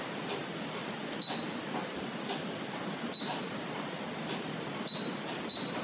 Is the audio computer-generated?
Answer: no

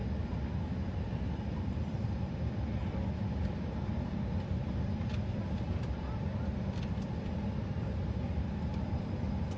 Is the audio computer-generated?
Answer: yes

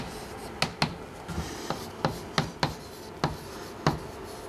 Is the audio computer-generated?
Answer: no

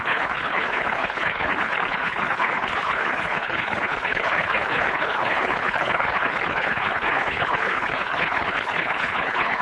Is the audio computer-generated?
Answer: yes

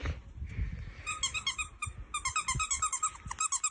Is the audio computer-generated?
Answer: no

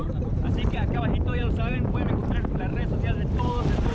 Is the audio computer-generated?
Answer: yes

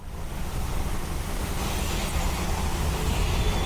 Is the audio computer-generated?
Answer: no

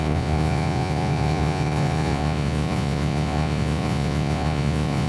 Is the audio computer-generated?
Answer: yes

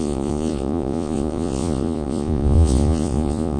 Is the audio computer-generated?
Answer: yes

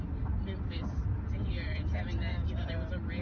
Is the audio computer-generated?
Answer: no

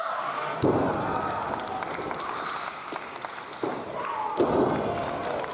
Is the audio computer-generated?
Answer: no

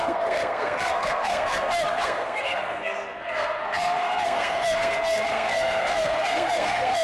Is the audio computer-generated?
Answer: yes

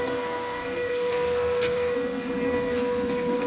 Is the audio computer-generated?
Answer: yes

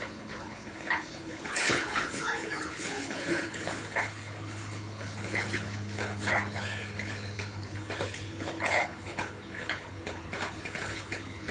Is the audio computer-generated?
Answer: yes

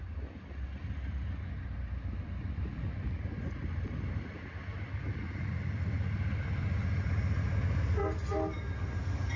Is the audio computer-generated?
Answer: no